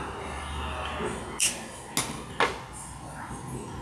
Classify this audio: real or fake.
real